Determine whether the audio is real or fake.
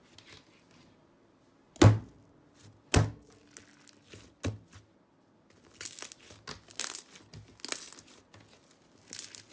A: real